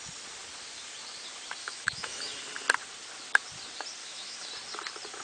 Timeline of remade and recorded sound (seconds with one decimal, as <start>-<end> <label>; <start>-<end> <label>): 0.0-1.6 recorded; 1.6-2.4 remade; 2.4-4.0 recorded; 4.0-4.5 remade; 4.5-5.2 recorded